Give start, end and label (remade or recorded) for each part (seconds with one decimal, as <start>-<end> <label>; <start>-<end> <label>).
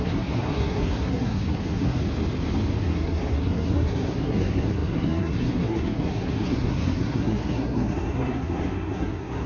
0.0-2.0 remade; 2.0-2.9 recorded; 2.9-9.5 remade